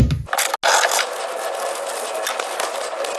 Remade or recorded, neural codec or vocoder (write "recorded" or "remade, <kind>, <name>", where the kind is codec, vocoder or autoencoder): recorded